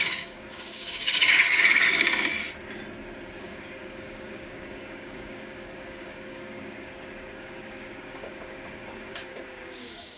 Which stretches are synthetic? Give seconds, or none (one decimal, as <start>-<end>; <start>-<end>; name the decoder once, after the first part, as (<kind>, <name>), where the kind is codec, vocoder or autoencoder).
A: 0.0-2.3 (codec, DAC); 3.4-10.2